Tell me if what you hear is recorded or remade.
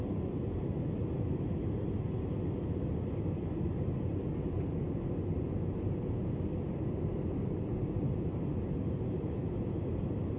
recorded